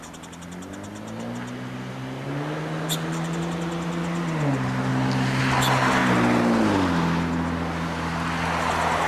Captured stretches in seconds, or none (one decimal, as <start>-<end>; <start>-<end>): 0.0-9.1